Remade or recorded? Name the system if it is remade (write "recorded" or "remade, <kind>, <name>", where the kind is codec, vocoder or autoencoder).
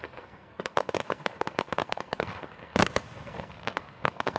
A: remade, codec, SNAC